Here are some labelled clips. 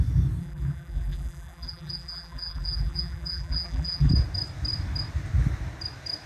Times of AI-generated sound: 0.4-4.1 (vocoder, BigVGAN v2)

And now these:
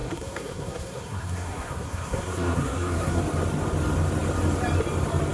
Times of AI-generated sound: 0.0-3.2 (codec, SNAC)

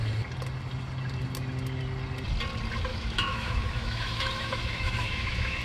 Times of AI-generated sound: 2.9-5.6 (autoencoder, DAC-VAE)

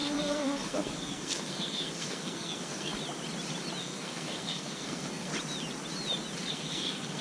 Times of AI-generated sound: 0.0-2.9 (codec, SNAC); 3.8-5.3; 6.5-7.2

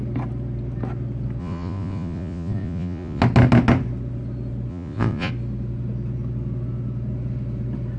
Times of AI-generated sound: 1.4-3.2 (vocoder, Vocos); 4.7-5.3